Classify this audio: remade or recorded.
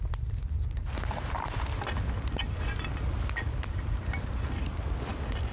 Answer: recorded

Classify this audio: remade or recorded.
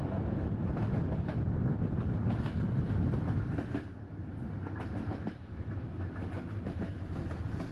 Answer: recorded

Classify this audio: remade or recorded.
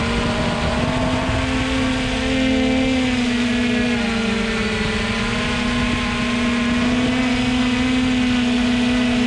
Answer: recorded